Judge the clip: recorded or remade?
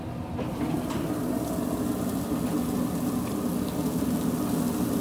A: recorded